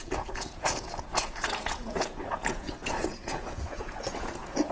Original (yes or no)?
no